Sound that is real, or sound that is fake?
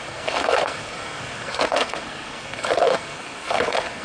fake